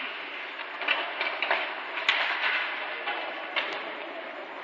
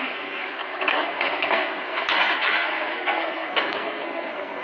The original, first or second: first